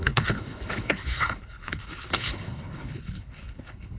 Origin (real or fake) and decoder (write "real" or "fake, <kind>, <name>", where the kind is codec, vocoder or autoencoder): fake, codec, HILCodec